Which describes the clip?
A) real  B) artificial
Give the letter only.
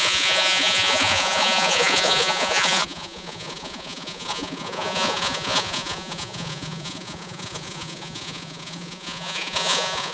B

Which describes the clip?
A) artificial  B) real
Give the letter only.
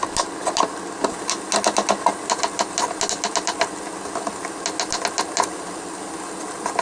B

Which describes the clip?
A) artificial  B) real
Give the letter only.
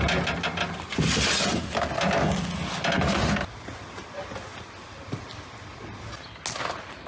B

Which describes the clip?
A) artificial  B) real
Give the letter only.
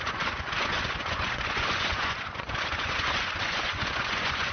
A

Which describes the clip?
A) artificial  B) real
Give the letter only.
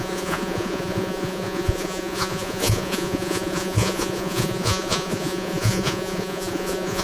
A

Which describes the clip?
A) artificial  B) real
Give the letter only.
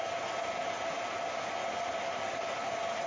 B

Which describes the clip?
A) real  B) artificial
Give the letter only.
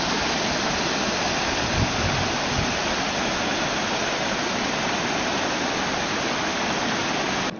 A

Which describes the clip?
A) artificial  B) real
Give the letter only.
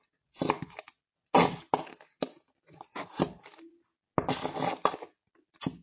B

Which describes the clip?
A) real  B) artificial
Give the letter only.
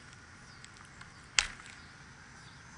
A